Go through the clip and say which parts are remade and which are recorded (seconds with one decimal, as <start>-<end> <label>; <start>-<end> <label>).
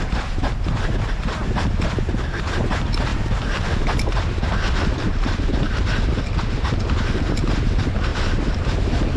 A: 0.0-3.1 recorded; 3.1-6.4 remade; 6.4-9.2 recorded